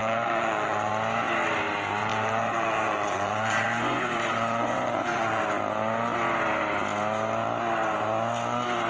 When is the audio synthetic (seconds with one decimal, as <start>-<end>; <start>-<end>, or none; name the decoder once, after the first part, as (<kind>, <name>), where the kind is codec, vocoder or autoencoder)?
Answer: 0.0-0.9 (vocoder, Vocos); 2.0-5.4